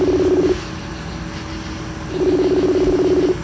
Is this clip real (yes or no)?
yes